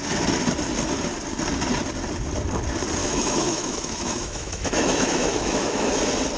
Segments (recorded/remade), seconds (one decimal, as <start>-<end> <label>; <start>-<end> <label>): 0.0-3.0 recorded; 3.0-6.0 remade; 6.0-6.4 recorded

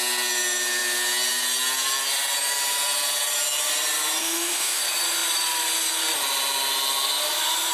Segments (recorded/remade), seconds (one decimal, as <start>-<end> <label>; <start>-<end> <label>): 0.0-4.2 recorded; 4.2-4.8 remade; 4.8-7.7 recorded

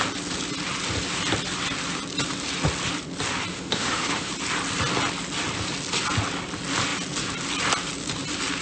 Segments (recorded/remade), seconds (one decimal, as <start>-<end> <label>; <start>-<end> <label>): 0.0-3.5 recorded; 3.5-4.3 remade; 4.3-8.6 recorded

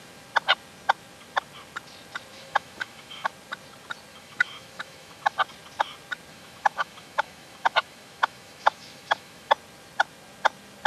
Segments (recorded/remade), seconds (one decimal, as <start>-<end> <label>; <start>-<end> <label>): 0.0-2.3 recorded; 2.3-3.3 remade; 3.3-4.1 recorded; 4.1-5.3 remade; 5.3-6.3 recorded; 6.3-9.5 remade; 9.5-10.9 recorded